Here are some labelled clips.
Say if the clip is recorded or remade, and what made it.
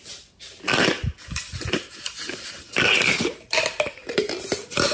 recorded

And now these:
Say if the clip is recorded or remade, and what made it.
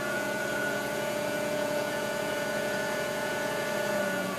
remade, vocoder, Vocos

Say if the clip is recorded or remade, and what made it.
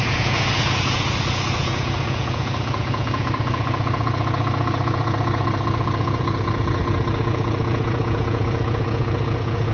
remade, vocoder, Vocos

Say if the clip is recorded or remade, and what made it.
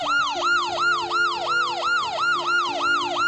recorded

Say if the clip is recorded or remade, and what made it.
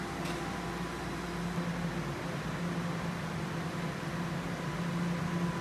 recorded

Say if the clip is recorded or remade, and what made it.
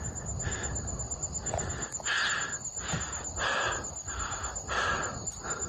recorded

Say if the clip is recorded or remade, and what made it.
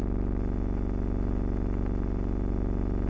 recorded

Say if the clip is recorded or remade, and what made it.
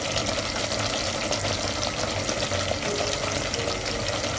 recorded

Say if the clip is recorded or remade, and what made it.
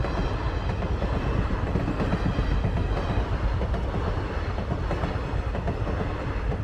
recorded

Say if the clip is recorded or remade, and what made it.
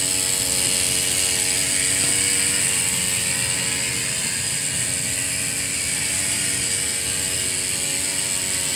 recorded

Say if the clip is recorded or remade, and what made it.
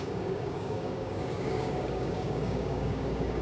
remade, codec, DAC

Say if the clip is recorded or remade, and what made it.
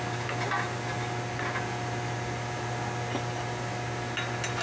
recorded